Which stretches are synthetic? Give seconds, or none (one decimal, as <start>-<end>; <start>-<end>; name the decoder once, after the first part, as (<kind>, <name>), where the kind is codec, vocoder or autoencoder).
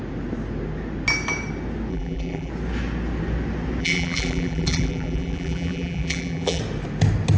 1.9-2.5 (vocoder, BigVGAN v2); 3.8-6.6